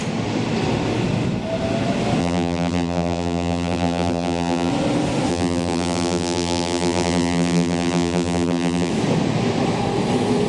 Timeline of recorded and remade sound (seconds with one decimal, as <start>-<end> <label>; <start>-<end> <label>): 0.0-2.2 recorded; 2.2-4.7 remade; 4.7-5.3 recorded; 5.3-8.9 remade; 8.9-10.5 recorded